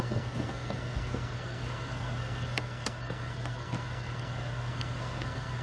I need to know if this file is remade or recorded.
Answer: remade